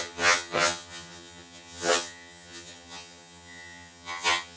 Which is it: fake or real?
fake